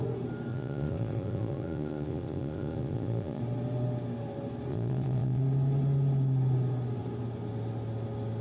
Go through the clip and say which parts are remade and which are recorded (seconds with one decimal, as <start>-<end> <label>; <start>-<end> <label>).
0.0-0.5 recorded; 0.5-3.4 remade; 3.4-4.7 recorded; 4.7-5.4 remade; 5.4-8.4 recorded